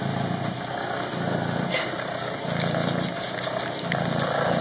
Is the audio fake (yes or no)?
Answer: no